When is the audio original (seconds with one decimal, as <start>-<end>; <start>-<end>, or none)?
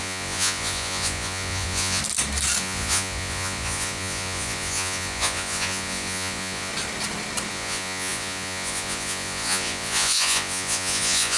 2.0-2.6; 6.7-7.5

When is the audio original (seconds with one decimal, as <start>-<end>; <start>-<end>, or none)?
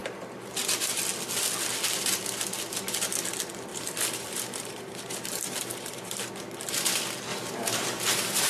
0.0-3.7; 6.3-7.3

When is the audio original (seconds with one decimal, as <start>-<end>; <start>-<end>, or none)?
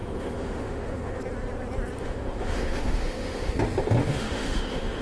1.2-2.0; 3.5-4.0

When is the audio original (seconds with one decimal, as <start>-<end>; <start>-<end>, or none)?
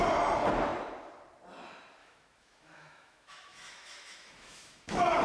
0.0-2.0